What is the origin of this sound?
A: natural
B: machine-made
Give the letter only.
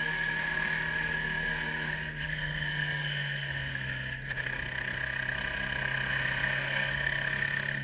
B